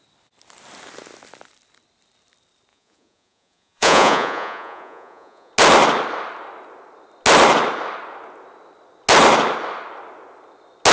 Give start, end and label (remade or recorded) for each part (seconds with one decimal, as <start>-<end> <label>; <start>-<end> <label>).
0.0-2.7 recorded; 2.7-5.5 remade; 5.5-10.9 recorded